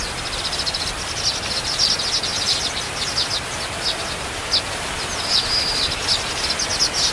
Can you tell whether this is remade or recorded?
recorded